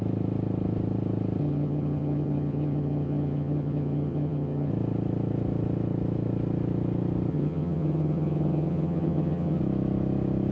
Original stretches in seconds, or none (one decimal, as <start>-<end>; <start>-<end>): 0.0-1.4; 4.7-7.3; 9.6-10.5